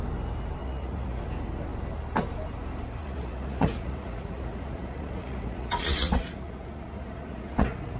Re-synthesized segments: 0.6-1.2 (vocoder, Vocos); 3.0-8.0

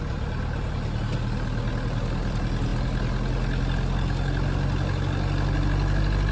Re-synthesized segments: none